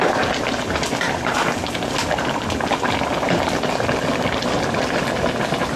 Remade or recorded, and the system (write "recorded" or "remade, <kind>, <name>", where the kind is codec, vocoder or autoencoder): recorded